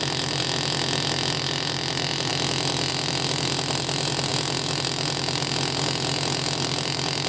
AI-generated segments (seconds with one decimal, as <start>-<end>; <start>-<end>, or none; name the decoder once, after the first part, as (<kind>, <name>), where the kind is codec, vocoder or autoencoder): 0.0-0.4 (vocoder, BigVGAN v2); 1.4-2.3; 2.9-7.3